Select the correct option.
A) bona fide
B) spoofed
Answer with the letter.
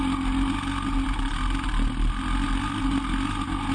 A